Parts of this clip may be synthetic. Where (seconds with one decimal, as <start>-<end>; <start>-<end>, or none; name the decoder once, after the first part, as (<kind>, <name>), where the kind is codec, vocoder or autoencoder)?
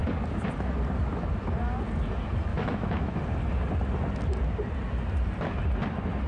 2.5-3.2 (autoencoder, DAC-VAE)